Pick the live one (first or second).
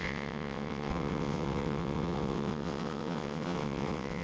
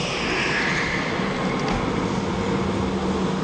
second